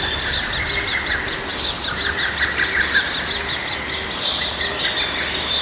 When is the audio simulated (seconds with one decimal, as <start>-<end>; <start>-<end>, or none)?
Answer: none